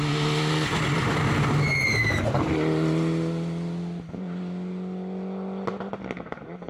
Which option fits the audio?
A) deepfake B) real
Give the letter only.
B